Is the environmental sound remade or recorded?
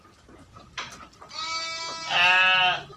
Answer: recorded